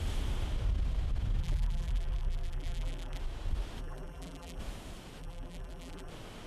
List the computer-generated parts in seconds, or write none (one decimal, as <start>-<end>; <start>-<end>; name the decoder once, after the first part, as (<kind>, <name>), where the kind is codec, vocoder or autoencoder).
1.4-3.2 (vocoder, BigVGAN v2); 3.8-4.6; 5.2-6.1